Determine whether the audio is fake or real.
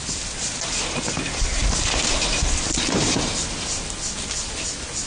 real